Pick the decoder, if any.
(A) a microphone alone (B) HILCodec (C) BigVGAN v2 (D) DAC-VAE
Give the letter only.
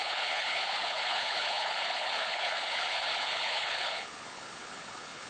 B